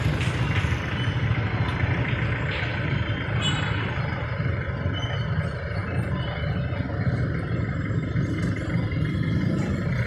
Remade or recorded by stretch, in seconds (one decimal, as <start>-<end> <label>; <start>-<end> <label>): 0.0-10.1 recorded